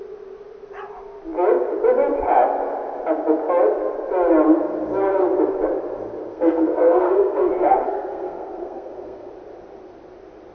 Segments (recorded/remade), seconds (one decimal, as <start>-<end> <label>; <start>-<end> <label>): 0.0-6.3 recorded; 6.3-9.3 remade; 9.3-10.5 recorded